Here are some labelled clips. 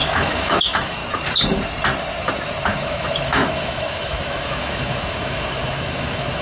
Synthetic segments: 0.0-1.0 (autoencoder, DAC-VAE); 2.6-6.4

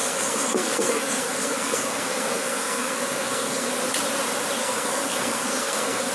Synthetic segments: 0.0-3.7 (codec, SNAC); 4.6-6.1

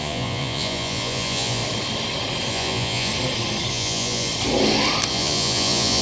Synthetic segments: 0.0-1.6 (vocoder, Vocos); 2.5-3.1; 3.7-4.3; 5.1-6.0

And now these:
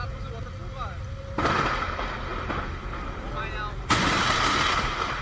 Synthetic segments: none

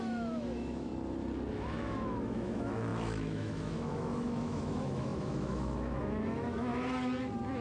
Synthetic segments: 0.0-0.9 (autoencoder, DAC-VAE); 1.5-6.7